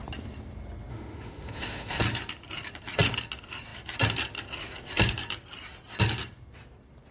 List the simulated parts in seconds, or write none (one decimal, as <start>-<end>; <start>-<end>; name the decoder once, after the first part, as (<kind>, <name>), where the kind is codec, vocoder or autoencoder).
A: 0.9-2.0 (autoencoder, DAC-VAE)